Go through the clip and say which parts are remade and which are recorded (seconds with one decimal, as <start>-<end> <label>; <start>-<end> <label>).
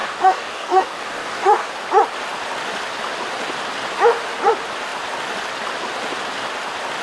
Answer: 0.0-1.7 remade; 1.7-7.0 recorded